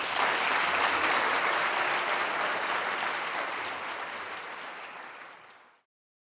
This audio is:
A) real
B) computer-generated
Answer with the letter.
A